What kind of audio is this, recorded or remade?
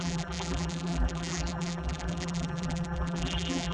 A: remade